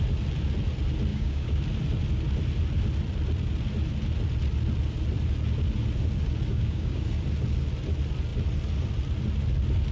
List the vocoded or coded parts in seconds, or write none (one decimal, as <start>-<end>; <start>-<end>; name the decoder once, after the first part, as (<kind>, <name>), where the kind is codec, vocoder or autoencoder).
1.1-1.6 (codec, DAC); 6.5-7.0

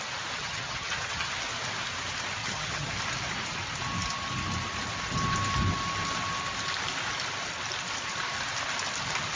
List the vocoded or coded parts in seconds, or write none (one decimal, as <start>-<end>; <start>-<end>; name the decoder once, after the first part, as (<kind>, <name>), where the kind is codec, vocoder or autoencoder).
0.4-1.3 (vocoder, HiFi-GAN); 2.4-2.9

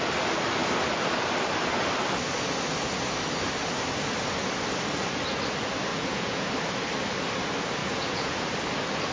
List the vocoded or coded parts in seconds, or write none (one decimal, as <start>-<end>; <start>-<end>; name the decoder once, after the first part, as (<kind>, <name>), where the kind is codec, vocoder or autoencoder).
5.9-6.5 (vocoder, Vocos); 7.8-8.5